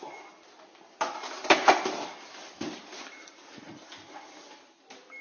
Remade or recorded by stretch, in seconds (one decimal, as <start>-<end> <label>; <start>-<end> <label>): 0.0-2.4 recorded; 2.4-3.7 remade; 3.7-5.2 recorded